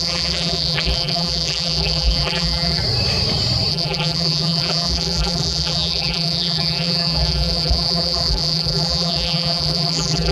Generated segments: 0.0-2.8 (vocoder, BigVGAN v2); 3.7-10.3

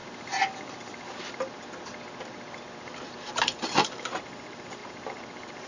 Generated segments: 3.4-5.7 (vocoder, BigVGAN v2)

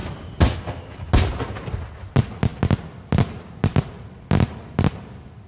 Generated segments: none

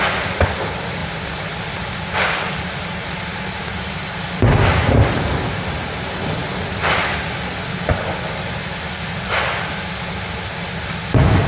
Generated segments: 1.0-1.6 (vocoder, BigVGAN v2); 3.7-4.5

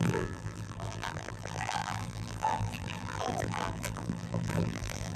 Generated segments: 0.0-5.2 (vocoder, BigVGAN v2)